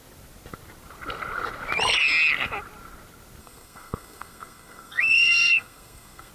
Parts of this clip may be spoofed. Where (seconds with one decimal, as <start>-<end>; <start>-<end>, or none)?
3.4-6.3